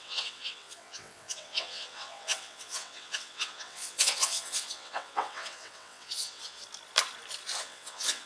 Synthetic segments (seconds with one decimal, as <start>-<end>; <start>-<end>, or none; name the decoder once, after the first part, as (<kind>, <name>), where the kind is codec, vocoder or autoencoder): 0.0-6.6 (vocoder, WaveNeXt); 7.6-8.3